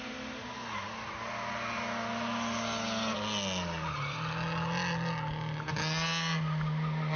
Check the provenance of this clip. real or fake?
real